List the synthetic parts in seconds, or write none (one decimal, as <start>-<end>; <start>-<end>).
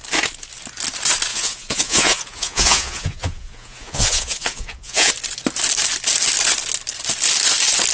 1.3-5.1